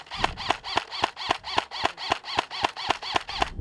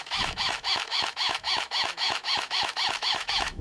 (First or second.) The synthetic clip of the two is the second